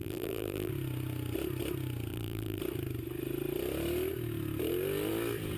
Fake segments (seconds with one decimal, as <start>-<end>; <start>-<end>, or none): 0.0-0.7; 2.1-2.6